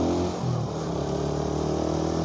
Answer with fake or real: real